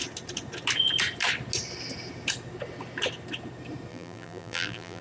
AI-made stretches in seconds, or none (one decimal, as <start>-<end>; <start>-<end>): 3.9-5.0

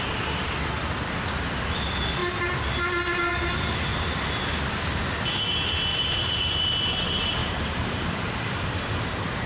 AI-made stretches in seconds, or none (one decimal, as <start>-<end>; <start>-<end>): 5.9-6.8; 7.4-8.6

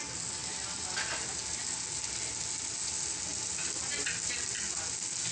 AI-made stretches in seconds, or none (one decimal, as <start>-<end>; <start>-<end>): 0.4-1.0; 3.3-4.3

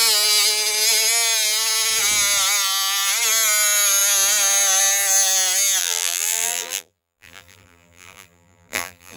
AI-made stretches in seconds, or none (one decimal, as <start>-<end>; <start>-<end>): 5.8-9.2

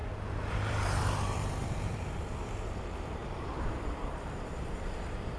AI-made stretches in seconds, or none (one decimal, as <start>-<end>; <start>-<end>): 0.5-5.4